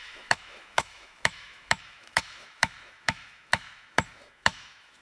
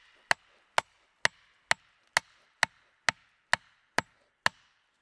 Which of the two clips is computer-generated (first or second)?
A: first